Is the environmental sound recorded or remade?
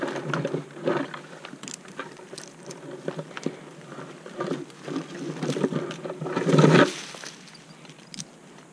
recorded